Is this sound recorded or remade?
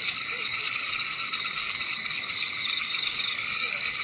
remade